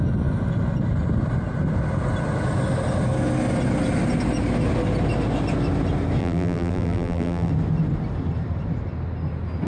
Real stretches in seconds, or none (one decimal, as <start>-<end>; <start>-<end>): 0.0-6.2; 7.5-9.7